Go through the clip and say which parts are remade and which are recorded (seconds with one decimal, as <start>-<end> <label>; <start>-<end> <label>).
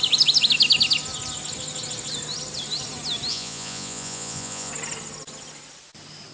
0.0-3.3 recorded; 3.3-4.7 remade; 4.7-6.3 recorded